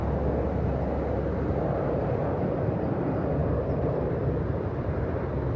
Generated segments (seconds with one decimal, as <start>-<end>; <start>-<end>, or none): 1.8-5.6